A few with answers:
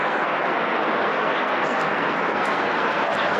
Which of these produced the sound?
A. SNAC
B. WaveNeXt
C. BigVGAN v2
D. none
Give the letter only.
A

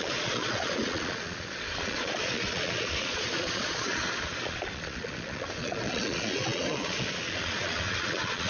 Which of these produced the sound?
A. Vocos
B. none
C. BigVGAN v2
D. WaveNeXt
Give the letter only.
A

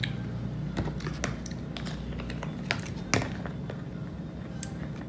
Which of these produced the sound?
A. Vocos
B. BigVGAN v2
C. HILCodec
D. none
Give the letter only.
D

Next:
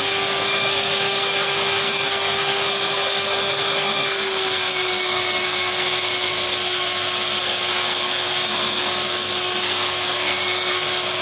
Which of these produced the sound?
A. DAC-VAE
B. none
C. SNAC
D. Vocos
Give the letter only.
C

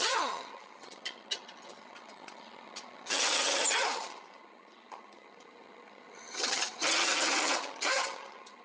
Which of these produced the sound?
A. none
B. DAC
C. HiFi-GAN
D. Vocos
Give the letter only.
C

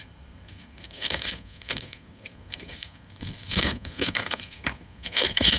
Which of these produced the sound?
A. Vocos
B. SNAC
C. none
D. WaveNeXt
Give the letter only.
B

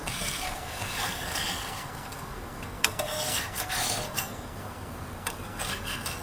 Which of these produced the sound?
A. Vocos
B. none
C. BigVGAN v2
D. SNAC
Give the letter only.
D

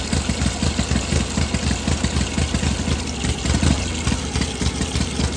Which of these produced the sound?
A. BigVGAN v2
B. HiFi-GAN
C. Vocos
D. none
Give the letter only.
D